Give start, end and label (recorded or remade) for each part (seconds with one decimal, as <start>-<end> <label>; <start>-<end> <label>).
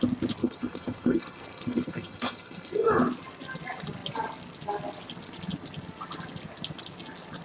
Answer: 0.0-0.4 recorded; 0.4-3.0 remade; 3.0-7.4 recorded